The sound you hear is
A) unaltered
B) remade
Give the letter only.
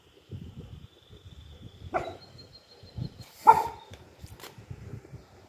B